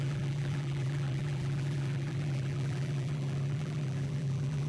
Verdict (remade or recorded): remade